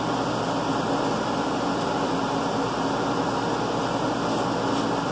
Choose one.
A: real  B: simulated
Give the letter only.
A